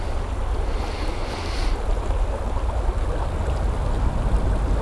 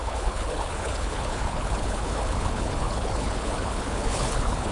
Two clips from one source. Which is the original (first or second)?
first